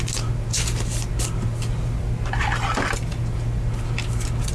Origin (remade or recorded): recorded